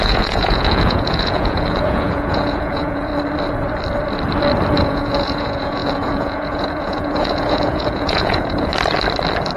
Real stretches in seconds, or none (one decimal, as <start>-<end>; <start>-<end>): 3.1-4.8; 8.7-9.6